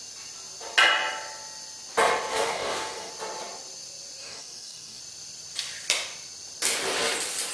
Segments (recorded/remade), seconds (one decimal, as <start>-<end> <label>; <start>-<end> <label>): 0.0-2.3 recorded; 2.3-3.1 remade; 3.1-4.2 recorded; 4.2-5.0 remade; 5.0-7.5 recorded